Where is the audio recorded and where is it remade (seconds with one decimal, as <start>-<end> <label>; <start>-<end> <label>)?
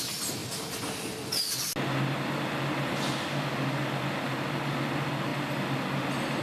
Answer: 0.0-6.4 recorded